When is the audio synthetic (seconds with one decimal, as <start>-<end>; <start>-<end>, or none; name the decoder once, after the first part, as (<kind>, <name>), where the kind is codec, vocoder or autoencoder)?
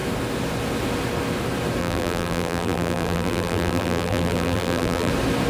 1.8-5.1 (vocoder, BigVGAN v2)